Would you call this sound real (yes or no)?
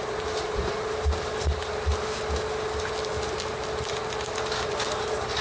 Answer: yes